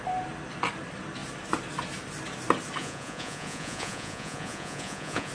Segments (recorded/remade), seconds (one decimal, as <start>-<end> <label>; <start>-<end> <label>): 0.0-2.8 recorded; 2.8-5.3 remade